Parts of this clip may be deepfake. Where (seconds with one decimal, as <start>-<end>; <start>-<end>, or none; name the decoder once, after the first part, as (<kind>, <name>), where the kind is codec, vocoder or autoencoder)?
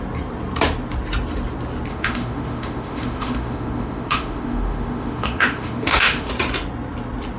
1.9-6.3 (autoencoder, DAC-VAE)